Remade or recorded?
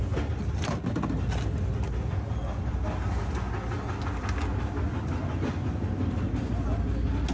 recorded